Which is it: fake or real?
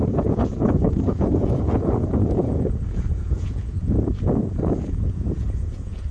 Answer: fake